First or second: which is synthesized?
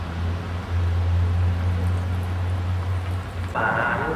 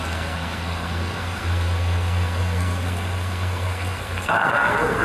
second